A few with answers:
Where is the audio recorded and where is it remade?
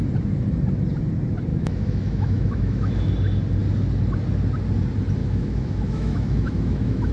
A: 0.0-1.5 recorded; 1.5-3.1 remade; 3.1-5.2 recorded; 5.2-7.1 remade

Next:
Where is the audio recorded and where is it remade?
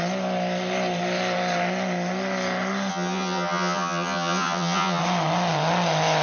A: 0.0-2.9 recorded; 2.9-5.0 remade; 5.0-6.2 recorded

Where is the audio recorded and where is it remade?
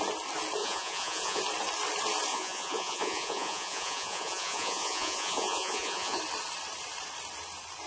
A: 0.0-0.6 recorded; 0.6-1.4 remade; 1.4-2.3 recorded; 2.3-6.2 remade; 6.2-7.9 recorded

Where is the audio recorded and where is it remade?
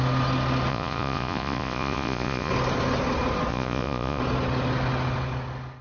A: 0.0-0.7 recorded; 0.7-2.5 remade; 2.5-3.5 recorded; 3.5-4.2 remade; 4.2-5.8 recorded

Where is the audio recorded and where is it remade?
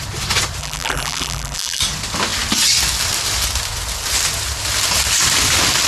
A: 0.0-0.6 recorded; 0.6-1.8 remade; 1.8-5.9 recorded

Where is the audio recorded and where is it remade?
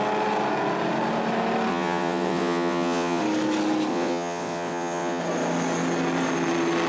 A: 0.0-1.7 recorded; 1.7-3.2 remade; 3.2-3.9 recorded; 3.9-5.2 remade; 5.2-6.9 recorded